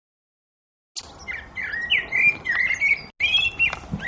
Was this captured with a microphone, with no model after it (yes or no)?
yes